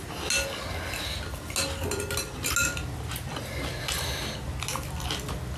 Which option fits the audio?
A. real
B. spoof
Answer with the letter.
A